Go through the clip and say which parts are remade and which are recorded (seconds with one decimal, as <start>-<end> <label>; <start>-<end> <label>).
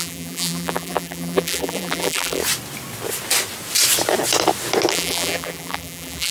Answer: 0.0-2.4 remade; 2.4-4.9 recorded; 4.9-6.3 remade